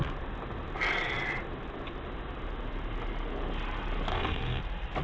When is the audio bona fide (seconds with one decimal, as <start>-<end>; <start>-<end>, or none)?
0.0-4.1; 4.6-5.0